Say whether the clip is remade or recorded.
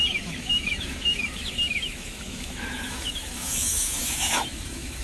remade